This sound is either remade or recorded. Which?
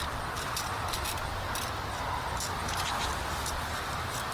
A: recorded